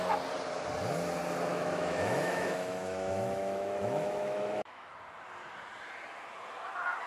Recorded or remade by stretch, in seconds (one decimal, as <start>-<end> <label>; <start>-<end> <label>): 0.0-1.5 recorded; 1.5-4.9 remade; 4.9-7.1 recorded